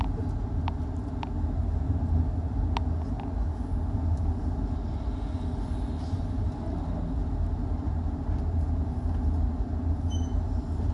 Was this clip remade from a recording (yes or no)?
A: no